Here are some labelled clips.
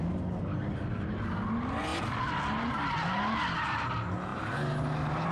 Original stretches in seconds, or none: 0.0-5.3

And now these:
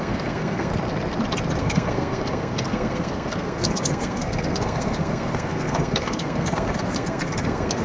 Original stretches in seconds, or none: 0.7-1.6

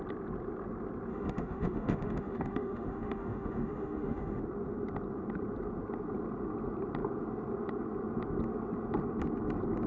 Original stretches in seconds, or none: 0.0-1.1; 4.4-9.9

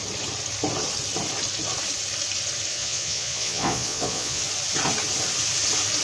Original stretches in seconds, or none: 0.0-2.7; 4.4-6.0

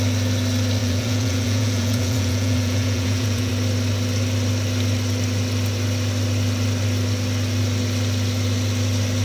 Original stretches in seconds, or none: 0.0-0.8; 3.5-9.2

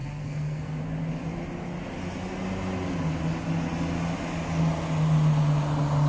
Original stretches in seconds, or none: 0.8-6.1